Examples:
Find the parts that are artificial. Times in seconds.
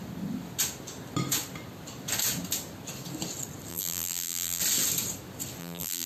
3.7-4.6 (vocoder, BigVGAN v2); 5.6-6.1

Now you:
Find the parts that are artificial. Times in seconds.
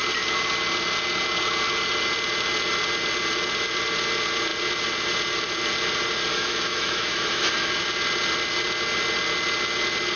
6.3-7.7 (autoencoder, DAC-VAE)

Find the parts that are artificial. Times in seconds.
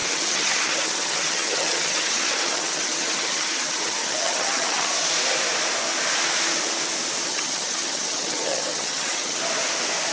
0.0-4.9 (vocoder, HiFi-GAN); 7.3-9.4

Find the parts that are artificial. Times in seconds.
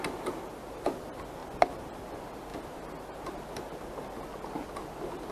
none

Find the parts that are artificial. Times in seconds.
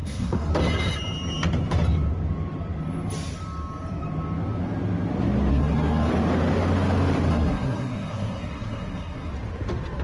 0.0-0.5 (codec, SNAC); 5.5-6.1; 7.3-9.3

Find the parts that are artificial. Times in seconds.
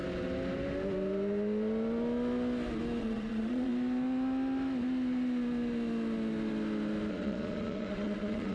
3.0-3.7 (vocoder, Vocos); 7.1-8.5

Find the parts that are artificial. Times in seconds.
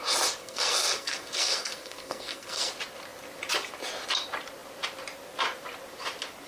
0.4-2.7 (codec, SNAC)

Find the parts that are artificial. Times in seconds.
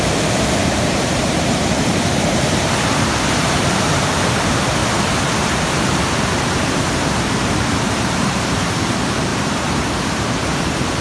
0.0-4.8 (vocoder, BigVGAN v2); 5.7-11.0